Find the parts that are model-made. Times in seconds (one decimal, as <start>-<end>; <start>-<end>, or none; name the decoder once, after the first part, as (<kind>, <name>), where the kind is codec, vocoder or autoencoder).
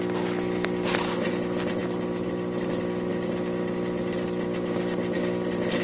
none